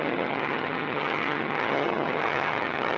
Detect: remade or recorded remade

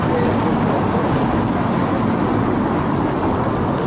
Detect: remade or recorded recorded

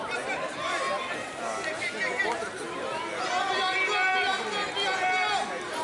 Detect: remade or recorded recorded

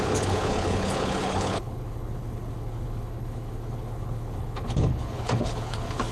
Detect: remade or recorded remade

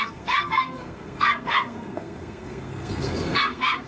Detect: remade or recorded remade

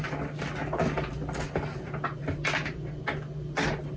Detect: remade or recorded recorded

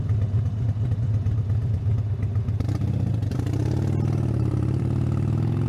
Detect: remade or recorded remade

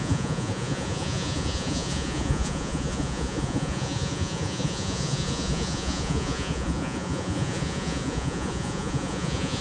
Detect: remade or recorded remade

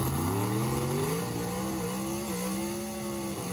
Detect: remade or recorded recorded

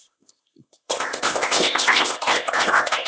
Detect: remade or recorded remade